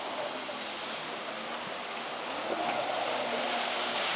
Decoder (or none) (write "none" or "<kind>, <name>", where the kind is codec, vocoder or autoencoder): none